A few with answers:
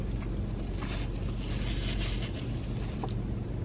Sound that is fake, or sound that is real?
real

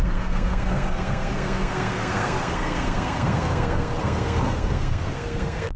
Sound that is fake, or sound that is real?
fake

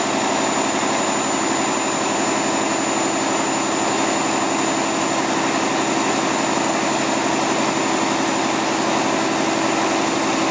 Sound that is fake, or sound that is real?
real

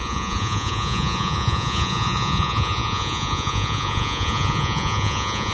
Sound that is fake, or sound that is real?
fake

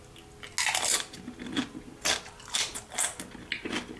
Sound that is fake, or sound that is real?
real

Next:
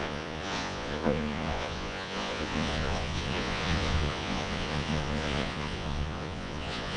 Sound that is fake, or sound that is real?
fake